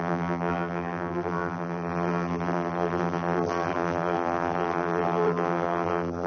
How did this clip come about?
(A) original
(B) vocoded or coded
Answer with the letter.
B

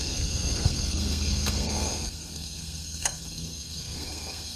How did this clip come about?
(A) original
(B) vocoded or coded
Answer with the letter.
B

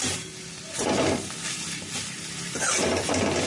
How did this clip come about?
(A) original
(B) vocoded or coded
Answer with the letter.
B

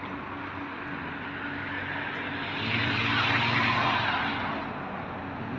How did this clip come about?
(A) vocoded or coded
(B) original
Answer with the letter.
B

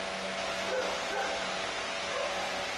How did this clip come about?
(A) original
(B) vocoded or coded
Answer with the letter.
A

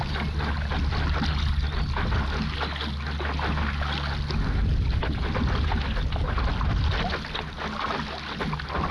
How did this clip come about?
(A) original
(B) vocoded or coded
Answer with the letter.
A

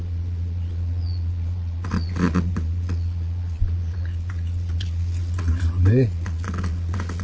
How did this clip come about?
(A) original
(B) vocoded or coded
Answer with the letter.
B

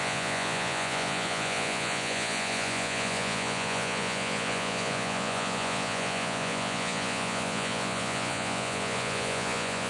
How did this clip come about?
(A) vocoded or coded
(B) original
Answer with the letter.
A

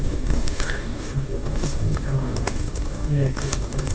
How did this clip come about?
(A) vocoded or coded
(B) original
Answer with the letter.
A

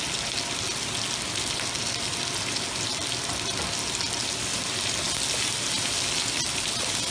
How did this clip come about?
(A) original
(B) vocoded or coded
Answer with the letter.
A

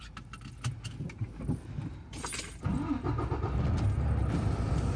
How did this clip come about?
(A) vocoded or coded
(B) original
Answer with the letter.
B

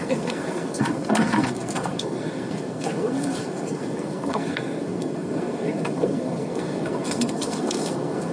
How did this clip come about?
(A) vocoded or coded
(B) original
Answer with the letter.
A